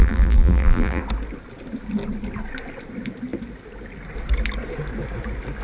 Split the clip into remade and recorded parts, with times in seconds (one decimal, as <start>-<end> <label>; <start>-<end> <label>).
0.0-1.0 remade; 1.0-5.6 recorded